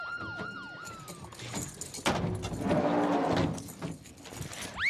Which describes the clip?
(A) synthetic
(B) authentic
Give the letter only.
B